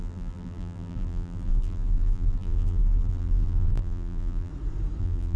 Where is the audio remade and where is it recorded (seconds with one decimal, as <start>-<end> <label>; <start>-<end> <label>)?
0.0-4.5 remade; 4.5-5.0 recorded; 5.0-5.4 remade